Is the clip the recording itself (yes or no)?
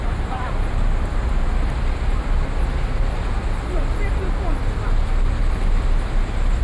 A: yes